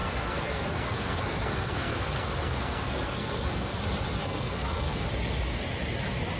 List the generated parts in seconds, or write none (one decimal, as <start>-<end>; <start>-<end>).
0.0-3.8; 4.2-5.1